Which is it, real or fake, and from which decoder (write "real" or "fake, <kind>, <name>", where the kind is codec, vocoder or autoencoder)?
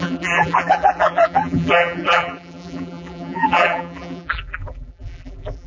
fake, vocoder, BigVGAN v2